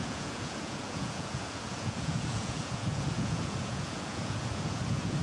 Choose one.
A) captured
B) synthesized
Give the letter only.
B